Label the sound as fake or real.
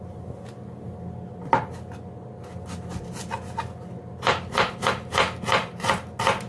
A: real